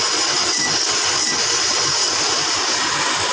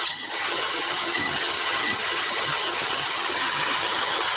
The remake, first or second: second